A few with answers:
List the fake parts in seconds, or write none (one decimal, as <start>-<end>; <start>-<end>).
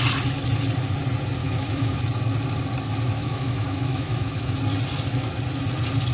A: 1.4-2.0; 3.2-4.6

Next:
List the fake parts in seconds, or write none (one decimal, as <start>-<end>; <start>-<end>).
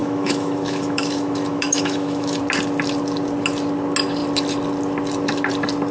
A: 0.0-2.4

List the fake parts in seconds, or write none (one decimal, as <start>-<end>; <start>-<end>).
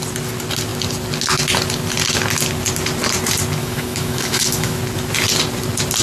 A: 3.6-4.8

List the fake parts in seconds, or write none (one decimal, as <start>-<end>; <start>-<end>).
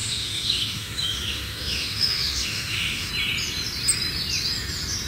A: 0.0-3.1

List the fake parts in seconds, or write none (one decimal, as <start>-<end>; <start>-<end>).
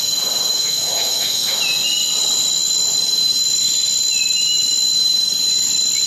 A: 0.5-1.6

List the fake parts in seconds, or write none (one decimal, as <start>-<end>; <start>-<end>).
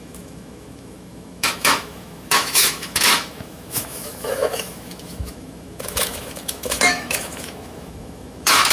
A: 0.0-8.7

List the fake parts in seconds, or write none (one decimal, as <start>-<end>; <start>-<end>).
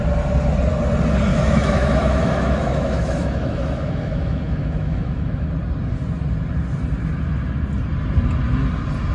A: 1.3-5.5